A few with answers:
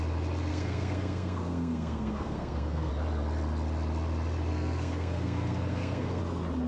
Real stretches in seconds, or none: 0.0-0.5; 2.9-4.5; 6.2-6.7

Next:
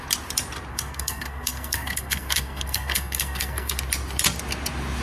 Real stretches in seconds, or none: 0.0-0.7; 3.7-5.0

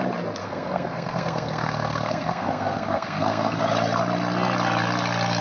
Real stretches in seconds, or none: 0.0-0.4; 3.6-5.4

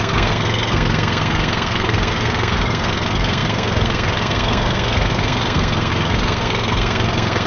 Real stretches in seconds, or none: none

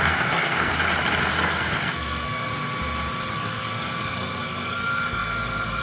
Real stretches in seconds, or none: 0.7-1.3; 2.5-3.3

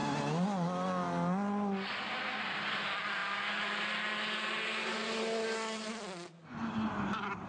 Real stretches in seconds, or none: 0.0-7.5

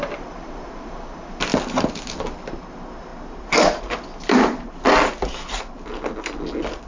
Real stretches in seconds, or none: 0.0-6.9

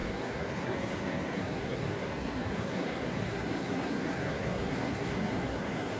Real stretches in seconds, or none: none